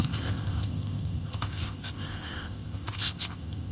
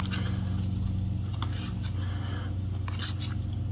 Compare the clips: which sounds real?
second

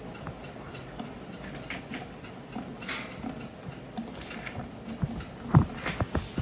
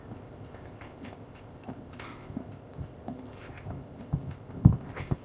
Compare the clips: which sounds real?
first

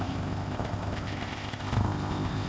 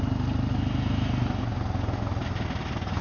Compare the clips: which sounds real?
second